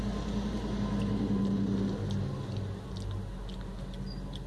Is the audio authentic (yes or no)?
yes